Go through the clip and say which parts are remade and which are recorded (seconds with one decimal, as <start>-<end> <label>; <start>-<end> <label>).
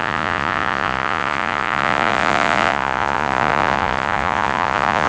0.0-5.1 remade